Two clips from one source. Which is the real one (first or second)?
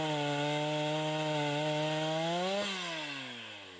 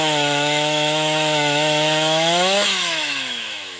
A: first